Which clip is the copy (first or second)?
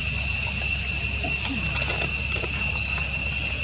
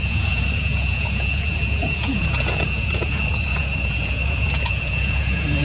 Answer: second